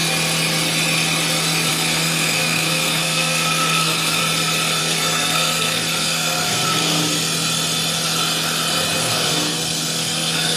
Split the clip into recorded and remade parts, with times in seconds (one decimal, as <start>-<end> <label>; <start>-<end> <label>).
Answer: 0.0-1.7 recorded; 1.7-4.2 remade; 4.2-4.8 recorded; 4.8-7.0 remade; 7.0-9.0 recorded; 9.0-10.6 remade